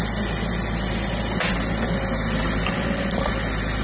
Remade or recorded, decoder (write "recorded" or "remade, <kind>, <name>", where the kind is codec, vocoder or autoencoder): recorded